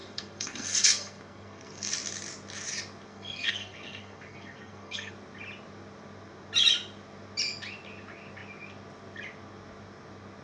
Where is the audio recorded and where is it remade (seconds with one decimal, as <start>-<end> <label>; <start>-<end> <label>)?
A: 0.0-1.9 remade; 1.9-3.1 recorded; 3.1-5.1 remade; 5.1-10.4 recorded